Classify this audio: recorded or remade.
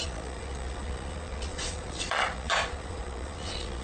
remade